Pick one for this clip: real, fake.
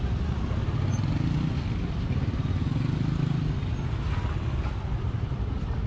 real